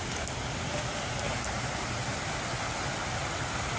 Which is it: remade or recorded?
recorded